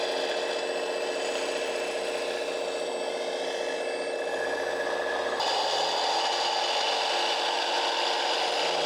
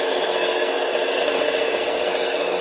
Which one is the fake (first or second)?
second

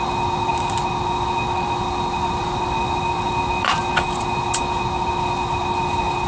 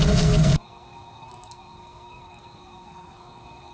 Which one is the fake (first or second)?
second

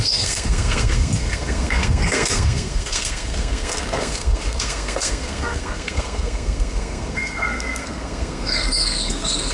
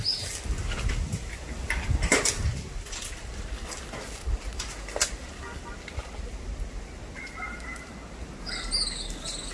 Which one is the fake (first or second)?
first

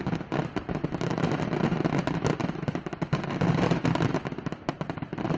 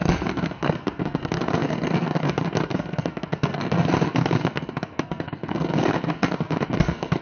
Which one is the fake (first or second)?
second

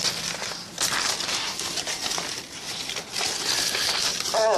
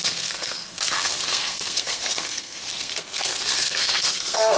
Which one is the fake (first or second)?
second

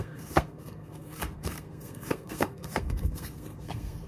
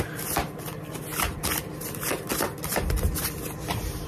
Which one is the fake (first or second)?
first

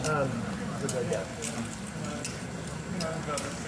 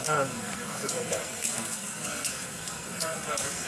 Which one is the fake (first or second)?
second